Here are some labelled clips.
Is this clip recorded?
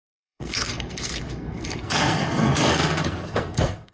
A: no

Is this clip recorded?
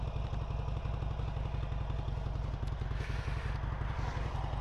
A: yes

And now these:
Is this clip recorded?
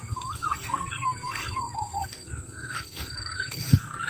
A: no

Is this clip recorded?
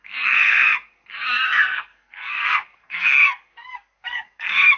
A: no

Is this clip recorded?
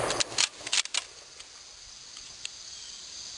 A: yes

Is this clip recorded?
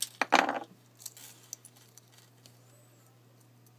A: yes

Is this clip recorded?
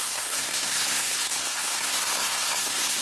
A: no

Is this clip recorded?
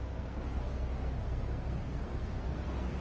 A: no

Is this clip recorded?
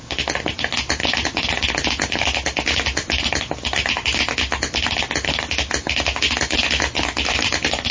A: yes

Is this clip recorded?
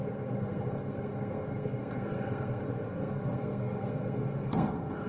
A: no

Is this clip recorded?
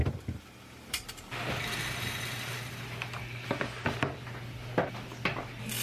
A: yes